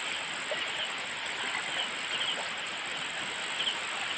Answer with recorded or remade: recorded